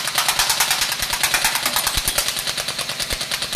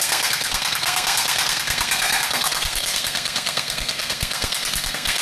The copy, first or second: second